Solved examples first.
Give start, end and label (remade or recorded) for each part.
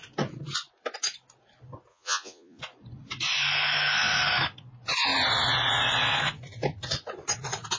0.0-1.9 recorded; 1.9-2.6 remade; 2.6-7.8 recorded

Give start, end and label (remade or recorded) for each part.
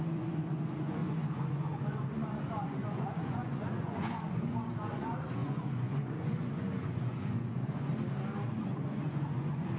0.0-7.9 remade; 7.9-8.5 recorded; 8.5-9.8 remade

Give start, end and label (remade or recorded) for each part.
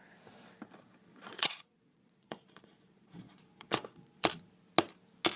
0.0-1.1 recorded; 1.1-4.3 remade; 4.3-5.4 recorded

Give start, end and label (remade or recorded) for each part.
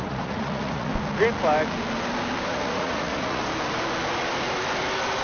0.0-0.9 remade; 0.9-2.5 recorded; 2.5-3.4 remade; 3.4-5.2 recorded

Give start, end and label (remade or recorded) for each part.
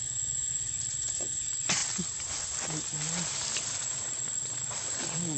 0.0-1.8 remade; 1.8-3.6 recorded; 3.6-5.4 remade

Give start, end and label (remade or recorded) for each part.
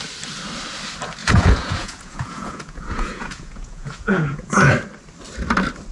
0.0-1.2 recorded; 1.2-4.7 remade; 4.7-5.9 recorded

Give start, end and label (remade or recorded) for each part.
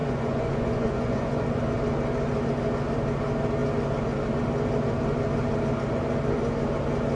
0.0-1.6 remade; 1.6-7.1 recorded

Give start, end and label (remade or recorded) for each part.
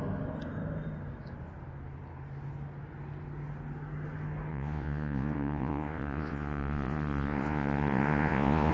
0.0-4.5 recorded; 4.5-8.7 remade